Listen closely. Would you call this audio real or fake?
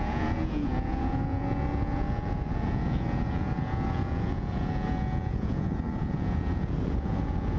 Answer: fake